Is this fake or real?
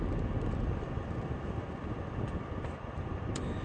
real